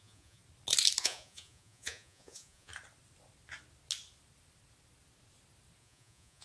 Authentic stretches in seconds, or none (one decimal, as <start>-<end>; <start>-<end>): 0.4-1.0; 2.7-5.8